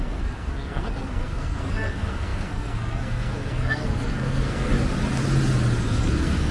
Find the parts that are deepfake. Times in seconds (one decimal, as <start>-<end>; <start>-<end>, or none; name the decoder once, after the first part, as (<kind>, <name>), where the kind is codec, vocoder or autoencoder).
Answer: 0.0-4.7 (codec, SNAC); 5.8-6.5